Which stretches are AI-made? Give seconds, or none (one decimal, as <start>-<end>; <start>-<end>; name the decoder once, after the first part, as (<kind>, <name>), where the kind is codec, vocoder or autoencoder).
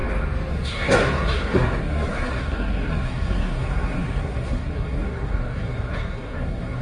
0.5-6.8 (codec, SNAC)